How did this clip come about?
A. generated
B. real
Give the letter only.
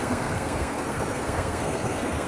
A